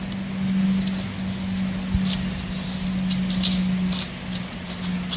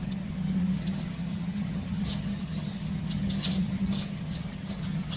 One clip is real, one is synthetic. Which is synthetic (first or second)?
second